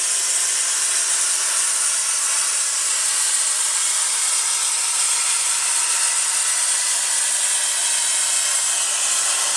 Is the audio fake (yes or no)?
no